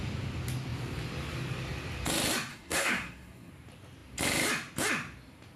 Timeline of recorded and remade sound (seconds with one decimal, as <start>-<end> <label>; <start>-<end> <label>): 0.0-2.5 recorded; 2.5-3.5 remade; 3.5-5.6 recorded